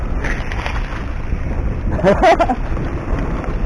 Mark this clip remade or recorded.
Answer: recorded